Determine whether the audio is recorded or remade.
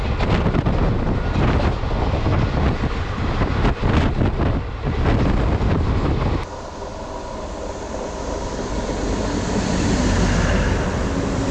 recorded